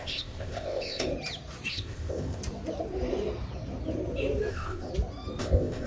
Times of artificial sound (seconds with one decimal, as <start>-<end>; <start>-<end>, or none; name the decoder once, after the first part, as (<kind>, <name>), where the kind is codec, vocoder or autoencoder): 0.0-1.1 (codec, ZipCodec); 1.7-2.4; 4.5-4.9; 5.4-5.9